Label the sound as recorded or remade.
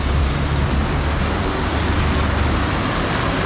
recorded